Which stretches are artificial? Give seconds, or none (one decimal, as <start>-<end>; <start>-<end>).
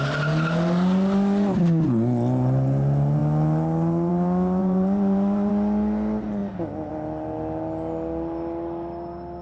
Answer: 4.6-5.5